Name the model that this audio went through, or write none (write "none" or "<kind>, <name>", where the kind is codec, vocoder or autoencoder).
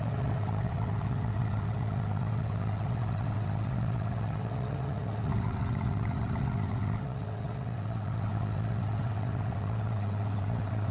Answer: vocoder, WaveNeXt